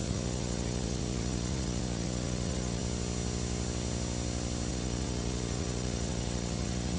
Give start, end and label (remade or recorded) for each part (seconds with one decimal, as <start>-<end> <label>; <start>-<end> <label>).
0.0-2.8 remade; 2.8-4.7 recorded; 4.7-7.0 remade